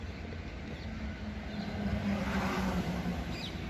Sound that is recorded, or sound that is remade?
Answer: recorded